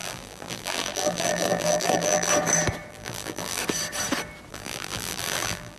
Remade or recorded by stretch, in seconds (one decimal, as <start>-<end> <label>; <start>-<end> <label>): 0.0-2.3 remade; 2.3-2.9 recorded; 2.9-3.6 remade; 3.6-4.5 recorded; 4.5-5.8 remade